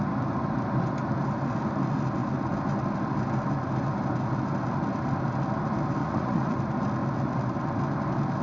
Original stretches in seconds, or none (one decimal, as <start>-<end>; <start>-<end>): 0.0-6.0; 6.6-8.4